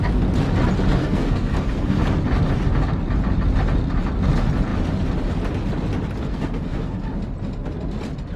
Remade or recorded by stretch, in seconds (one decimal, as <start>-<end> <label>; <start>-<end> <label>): 0.0-1.0 recorded; 1.0-2.0 remade; 2.0-6.2 recorded; 6.2-7.0 remade; 7.0-8.4 recorded